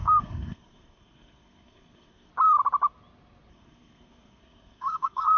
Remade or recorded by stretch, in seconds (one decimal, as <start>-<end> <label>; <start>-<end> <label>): 0.0-2.3 remade; 2.3-3.5 recorded; 3.5-5.4 remade